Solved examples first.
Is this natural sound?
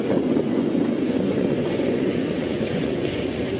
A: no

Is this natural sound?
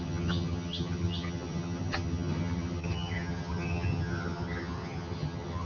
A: no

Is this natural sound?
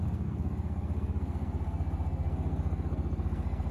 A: no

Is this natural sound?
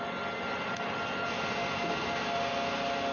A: yes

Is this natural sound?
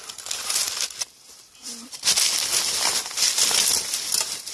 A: yes